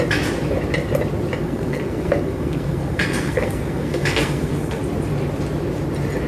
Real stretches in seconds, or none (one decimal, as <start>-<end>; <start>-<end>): 0.0-1.4; 4.8-6.3